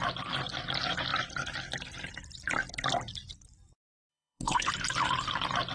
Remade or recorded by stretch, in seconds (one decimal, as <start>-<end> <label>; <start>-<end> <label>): 0.0-4.1 recorded; 4.1-4.7 remade; 4.7-5.7 recorded